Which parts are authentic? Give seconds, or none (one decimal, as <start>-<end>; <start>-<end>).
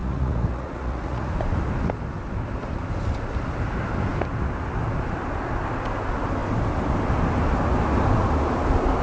1.3-9.0